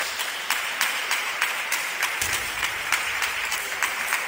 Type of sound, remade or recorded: remade